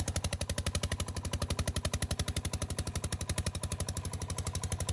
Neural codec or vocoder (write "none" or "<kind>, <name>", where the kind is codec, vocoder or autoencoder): none